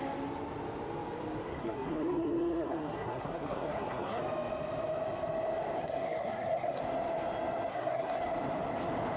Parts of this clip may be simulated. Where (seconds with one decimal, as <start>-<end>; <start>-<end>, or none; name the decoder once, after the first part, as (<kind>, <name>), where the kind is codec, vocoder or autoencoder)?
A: 1.5-4.2 (codec, SNAC); 5.8-6.8; 7.7-8.2